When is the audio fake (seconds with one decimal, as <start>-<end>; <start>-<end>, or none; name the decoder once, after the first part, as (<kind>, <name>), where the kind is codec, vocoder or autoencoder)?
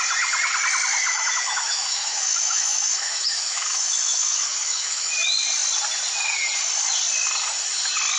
1.1-5.1 (autoencoder, DAC-VAE)